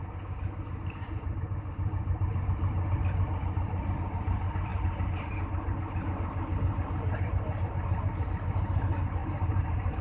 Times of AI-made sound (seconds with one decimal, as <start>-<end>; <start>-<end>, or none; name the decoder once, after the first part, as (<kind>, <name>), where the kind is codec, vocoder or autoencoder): 4.7-5.3 (vocoder, BigVGAN v2); 9.2-10.0